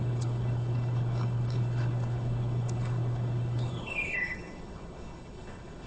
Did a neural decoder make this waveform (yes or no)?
yes